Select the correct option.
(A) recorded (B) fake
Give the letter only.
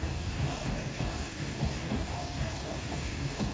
B